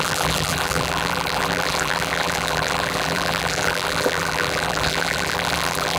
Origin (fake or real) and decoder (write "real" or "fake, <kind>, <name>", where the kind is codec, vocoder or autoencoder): fake, vocoder, BigVGAN v2